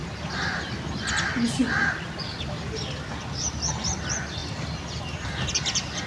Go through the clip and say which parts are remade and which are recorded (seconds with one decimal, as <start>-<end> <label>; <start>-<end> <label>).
0.0-3.7 remade; 3.7-4.4 recorded; 4.4-5.0 remade; 5.0-6.1 recorded